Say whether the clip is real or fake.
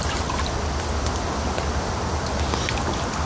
real